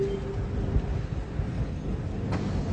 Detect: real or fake real